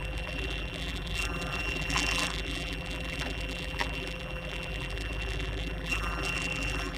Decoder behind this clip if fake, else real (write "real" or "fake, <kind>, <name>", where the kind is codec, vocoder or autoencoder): fake, vocoder, BigVGAN v2